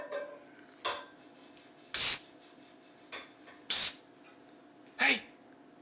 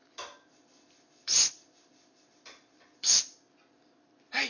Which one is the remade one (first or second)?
second